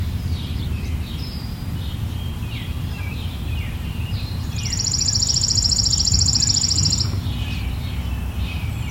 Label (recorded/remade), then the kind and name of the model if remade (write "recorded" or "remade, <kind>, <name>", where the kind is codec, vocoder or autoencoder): remade, vocoder, BigVGAN v2